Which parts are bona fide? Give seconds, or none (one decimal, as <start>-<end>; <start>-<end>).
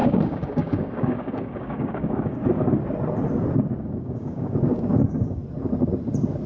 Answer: 2.5-3.8; 5.4-6.5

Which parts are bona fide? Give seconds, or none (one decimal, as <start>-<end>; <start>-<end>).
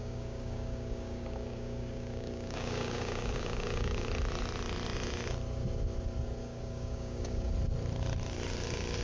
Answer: 4.1-6.4; 7.5-9.0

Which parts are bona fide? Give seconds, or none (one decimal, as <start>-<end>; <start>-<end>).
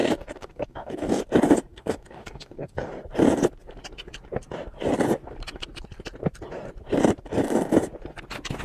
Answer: 1.2-1.7; 2.9-8.6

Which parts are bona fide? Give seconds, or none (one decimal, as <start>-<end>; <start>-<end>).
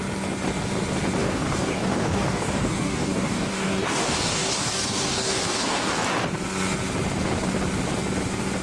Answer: 0.0-1.2; 5.9-8.6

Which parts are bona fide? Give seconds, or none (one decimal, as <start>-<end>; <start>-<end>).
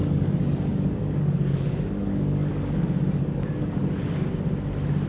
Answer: 3.8-5.1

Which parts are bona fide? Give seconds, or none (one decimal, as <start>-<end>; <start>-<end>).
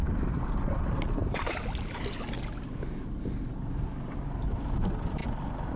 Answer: 0.0-5.8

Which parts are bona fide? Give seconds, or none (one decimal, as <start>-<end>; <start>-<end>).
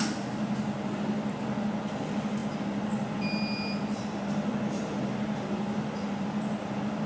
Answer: 0.0-7.1